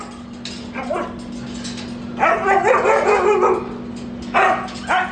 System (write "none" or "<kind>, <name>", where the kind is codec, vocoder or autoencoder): none